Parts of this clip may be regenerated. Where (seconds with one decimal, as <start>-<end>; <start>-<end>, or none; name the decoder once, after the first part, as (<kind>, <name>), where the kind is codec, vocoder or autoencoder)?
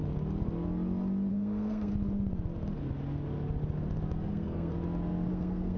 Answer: 1.3-1.9 (codec, SNAC); 4.3-4.7; 5.3-5.8